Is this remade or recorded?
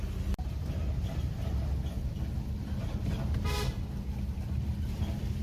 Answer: recorded